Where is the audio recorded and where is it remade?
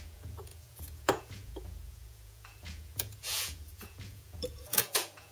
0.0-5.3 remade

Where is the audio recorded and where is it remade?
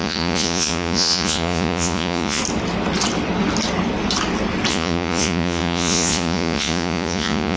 0.0-2.4 remade; 2.4-4.7 recorded; 4.7-7.6 remade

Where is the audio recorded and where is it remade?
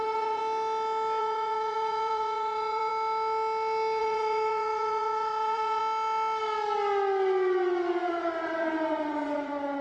0.0-0.4 remade; 0.4-1.2 recorded; 1.2-2.9 remade; 2.9-4.0 recorded; 4.0-5.8 remade; 5.8-8.1 recorded; 8.1-9.8 remade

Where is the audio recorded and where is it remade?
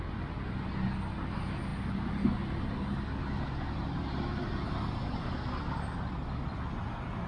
0.0-7.3 recorded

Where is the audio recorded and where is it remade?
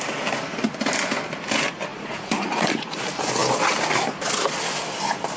0.0-1.9 recorded; 1.9-3.0 remade; 3.0-5.4 recorded